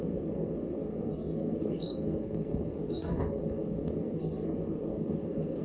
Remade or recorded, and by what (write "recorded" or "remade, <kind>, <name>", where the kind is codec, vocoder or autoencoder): remade, codec, SNAC